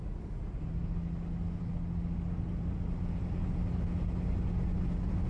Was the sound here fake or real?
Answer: real